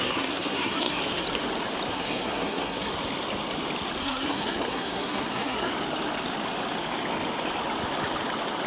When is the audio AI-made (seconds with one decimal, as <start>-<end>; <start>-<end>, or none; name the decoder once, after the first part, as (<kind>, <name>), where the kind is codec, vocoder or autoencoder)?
0.0-1.0 (codec, SNAC); 1.9-2.9; 4.0-5.7